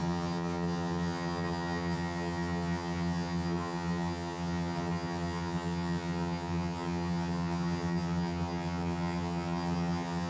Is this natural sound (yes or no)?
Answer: no